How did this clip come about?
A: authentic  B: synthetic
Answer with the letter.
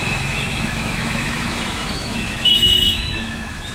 B